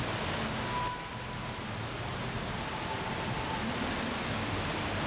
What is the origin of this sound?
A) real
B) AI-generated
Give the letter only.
A